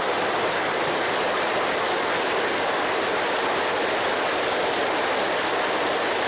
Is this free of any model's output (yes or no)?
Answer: yes